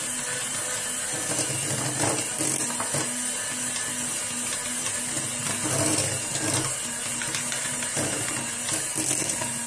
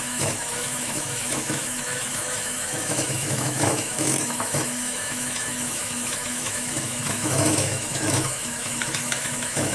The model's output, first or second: second